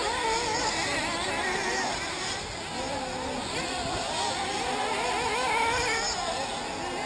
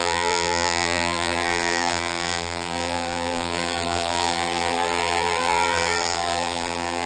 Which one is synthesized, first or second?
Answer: second